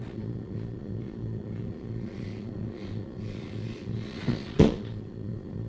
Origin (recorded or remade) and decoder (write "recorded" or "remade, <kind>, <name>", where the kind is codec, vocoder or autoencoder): remade, vocoder, Vocos